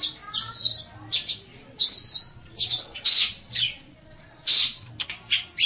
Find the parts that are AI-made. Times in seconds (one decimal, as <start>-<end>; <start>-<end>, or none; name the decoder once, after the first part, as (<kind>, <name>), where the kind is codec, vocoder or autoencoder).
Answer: 1.5-4.9 (vocoder, Vocos)